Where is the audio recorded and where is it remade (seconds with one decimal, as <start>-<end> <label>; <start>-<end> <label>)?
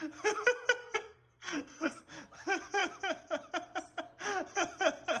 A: 0.0-0.8 recorded; 0.8-2.0 remade; 2.0-5.2 recorded